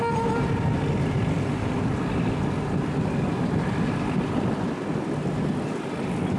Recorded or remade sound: recorded